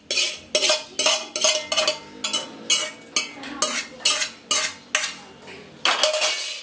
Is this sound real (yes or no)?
yes